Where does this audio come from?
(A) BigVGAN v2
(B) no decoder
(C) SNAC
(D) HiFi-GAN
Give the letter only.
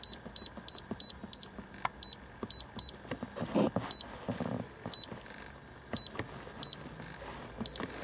B